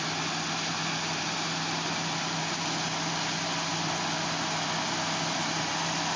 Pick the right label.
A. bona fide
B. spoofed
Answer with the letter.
A